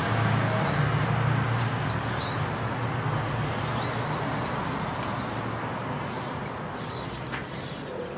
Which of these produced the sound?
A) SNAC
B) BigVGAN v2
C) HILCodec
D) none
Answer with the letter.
D